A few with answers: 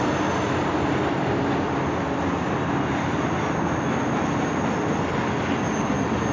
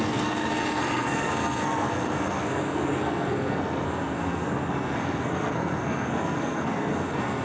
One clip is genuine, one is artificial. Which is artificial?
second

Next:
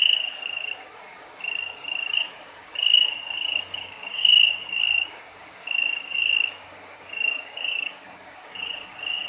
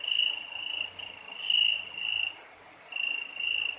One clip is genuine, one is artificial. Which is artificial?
first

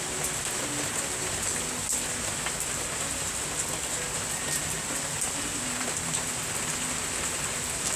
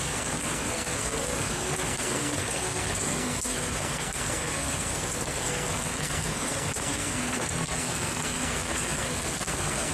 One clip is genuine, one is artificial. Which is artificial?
second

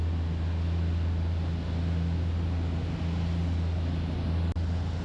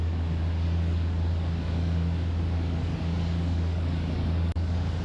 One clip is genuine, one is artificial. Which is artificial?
second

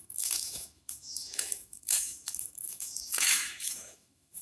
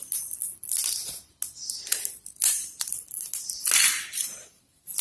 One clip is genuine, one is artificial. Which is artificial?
first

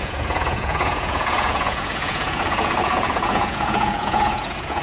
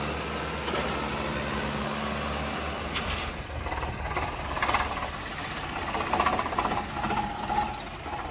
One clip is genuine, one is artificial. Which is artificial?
first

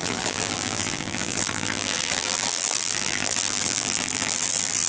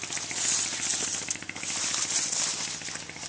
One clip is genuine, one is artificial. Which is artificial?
first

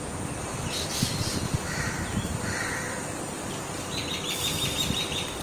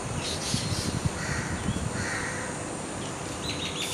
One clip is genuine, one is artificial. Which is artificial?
first